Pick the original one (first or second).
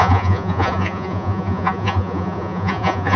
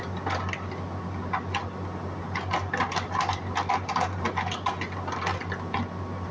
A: second